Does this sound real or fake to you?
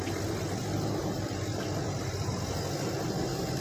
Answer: real